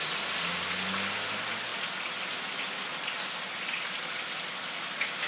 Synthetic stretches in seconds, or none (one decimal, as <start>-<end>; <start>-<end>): none